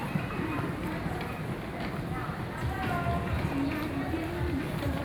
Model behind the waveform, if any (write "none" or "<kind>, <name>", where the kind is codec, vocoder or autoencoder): none